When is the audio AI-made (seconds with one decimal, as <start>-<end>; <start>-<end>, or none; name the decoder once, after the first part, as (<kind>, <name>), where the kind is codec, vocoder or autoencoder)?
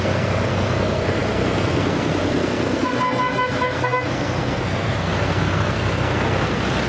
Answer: 0.0-6.9 (codec, SNAC)